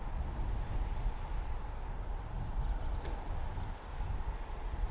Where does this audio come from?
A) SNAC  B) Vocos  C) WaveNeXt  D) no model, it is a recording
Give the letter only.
D